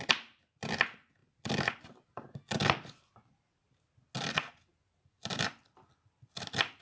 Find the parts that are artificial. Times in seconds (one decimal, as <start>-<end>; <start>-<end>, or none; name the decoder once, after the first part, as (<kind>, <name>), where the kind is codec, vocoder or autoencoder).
none